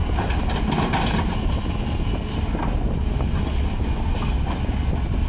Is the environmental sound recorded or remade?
recorded